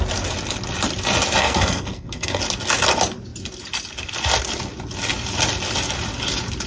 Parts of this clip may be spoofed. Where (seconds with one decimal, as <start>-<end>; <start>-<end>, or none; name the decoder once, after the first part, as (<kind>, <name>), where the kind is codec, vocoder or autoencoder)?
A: 1.4-2.4 (codec, SNAC)

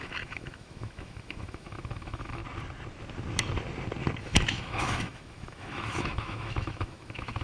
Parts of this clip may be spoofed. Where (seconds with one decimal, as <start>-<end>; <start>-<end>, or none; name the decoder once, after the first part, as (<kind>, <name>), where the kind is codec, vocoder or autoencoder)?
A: 0.0-2.4 (autoencoder, DAC-VAE); 4.2-7.4

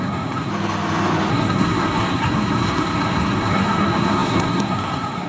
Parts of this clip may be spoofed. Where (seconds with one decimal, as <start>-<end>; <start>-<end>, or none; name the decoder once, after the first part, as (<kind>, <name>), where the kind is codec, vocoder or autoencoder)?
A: 0.0-0.5 (codec, SNAC); 1.3-5.3

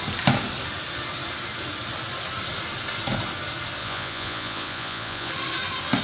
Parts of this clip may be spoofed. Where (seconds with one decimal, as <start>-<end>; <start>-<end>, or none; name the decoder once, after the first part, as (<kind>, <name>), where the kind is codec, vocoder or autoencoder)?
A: 3.8-5.3 (vocoder, Vocos)